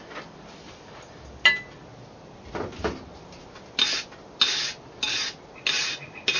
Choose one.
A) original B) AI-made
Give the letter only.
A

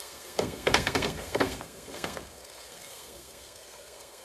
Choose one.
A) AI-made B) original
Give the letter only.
A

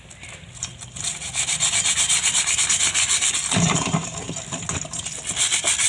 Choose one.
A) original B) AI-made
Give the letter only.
A